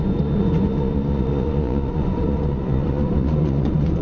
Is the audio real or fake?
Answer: fake